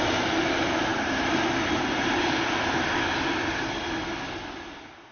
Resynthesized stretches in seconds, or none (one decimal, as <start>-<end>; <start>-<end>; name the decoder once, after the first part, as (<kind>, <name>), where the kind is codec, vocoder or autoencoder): none